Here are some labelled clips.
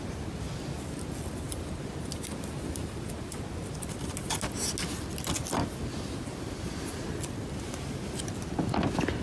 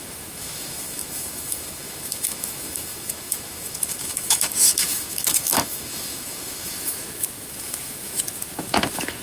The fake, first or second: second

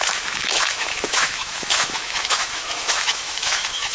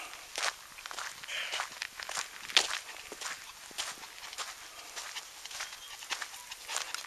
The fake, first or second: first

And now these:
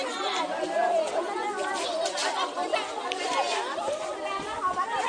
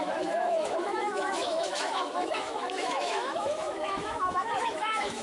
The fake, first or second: second